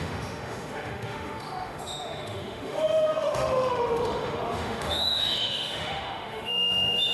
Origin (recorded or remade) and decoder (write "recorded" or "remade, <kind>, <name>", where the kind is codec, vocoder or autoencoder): remade, autoencoder, DAC-VAE